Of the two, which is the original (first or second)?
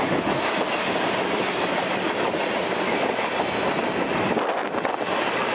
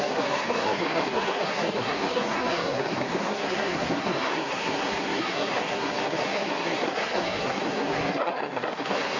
first